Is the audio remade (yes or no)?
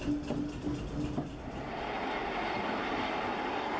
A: no